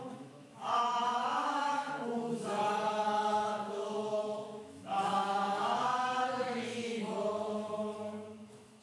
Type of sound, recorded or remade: remade